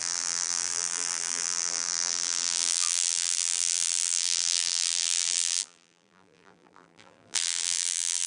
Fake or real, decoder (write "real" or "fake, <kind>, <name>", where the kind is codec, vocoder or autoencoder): fake, vocoder, BigVGAN v2